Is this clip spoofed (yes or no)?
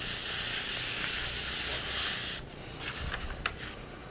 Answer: no